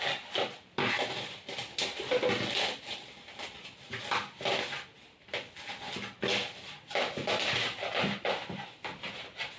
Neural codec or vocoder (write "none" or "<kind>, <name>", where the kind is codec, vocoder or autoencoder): none